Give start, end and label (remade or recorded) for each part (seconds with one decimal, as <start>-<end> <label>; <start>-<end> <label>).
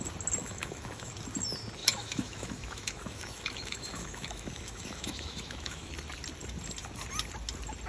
0.0-0.4 recorded; 0.4-1.1 remade; 1.1-1.8 recorded; 1.8-5.9 remade; 5.9-7.9 recorded